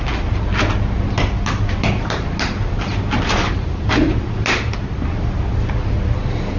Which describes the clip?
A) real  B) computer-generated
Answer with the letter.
A